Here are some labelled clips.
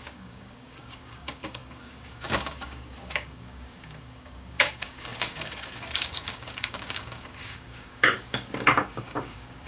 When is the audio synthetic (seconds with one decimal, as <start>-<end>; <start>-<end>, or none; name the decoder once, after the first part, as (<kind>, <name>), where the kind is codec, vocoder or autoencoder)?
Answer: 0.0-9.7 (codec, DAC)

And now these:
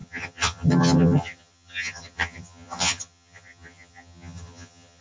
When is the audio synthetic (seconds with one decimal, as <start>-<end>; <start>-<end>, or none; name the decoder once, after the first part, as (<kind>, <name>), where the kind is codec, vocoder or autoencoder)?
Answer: 0.0-5.0 (vocoder, HiFi-GAN)

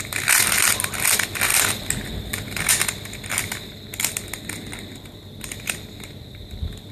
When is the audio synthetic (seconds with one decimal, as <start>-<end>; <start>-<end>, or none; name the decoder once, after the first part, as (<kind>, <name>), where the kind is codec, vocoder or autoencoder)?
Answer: none

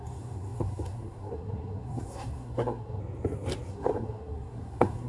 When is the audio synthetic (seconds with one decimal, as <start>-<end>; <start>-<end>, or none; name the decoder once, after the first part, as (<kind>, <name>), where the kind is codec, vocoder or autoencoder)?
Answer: 0.0-3.0 (codec, SNAC); 3.7-5.1